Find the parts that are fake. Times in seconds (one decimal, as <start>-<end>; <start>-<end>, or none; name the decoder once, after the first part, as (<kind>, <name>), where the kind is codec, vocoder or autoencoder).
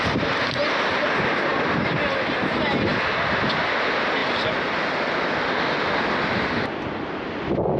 none